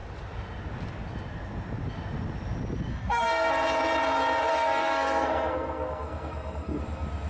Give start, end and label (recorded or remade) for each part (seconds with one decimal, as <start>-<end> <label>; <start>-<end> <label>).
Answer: 0.0-2.9 recorded; 2.9-3.5 remade; 3.5-4.5 recorded; 4.5-6.8 remade; 6.8-7.3 recorded